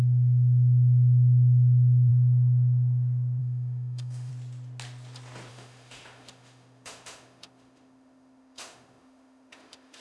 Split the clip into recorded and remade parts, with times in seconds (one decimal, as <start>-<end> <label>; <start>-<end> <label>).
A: 0.0-2.1 remade; 2.1-3.4 recorded; 3.4-4.3 remade; 4.3-5.5 recorded; 5.5-10.0 remade